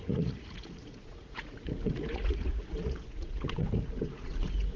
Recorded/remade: remade